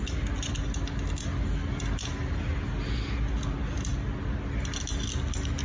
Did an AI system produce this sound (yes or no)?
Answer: no